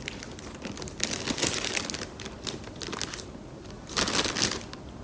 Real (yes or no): yes